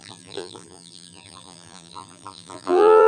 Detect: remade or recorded remade